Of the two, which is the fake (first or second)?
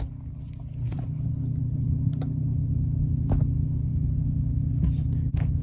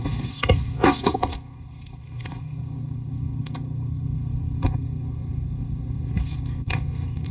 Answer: second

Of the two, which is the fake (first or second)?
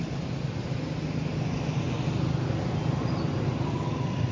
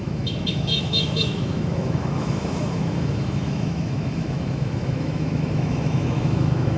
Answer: second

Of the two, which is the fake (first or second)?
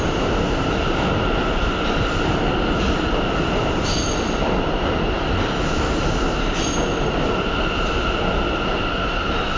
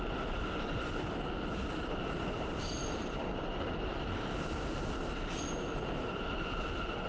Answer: second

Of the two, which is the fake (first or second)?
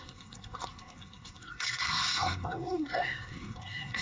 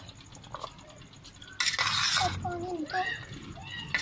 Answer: first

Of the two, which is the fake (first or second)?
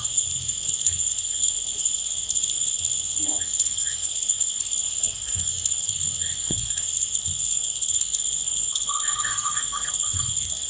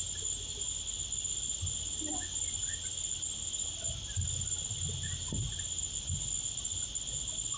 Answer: first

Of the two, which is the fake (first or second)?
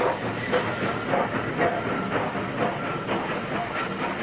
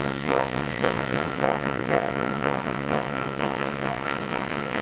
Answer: second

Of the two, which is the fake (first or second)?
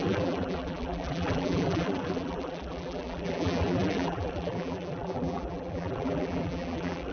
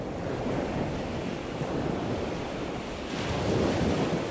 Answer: first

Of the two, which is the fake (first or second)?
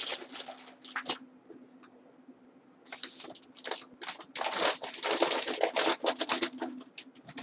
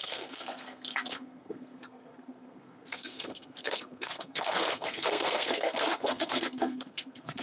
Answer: second